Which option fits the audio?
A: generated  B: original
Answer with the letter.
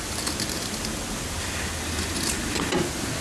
B